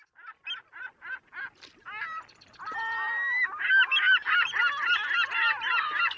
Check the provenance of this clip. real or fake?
real